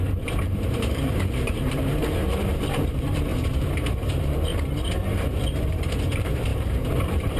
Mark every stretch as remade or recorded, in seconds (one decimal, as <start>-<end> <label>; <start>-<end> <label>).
0.0-4.5 remade; 4.5-5.6 recorded; 5.6-7.4 remade